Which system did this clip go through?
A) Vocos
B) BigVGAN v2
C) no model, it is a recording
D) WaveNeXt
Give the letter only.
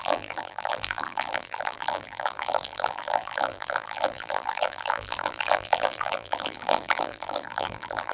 B